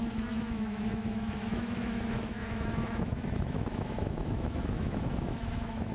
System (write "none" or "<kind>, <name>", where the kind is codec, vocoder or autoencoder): autoencoder, DAC-VAE